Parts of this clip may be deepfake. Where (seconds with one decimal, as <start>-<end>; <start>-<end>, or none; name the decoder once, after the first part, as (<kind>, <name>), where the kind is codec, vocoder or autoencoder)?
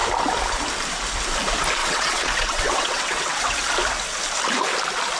1.8-3.7 (vocoder, WaveNeXt)